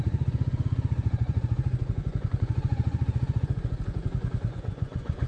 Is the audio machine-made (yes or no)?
yes